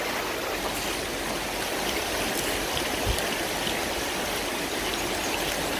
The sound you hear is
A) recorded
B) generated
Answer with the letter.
A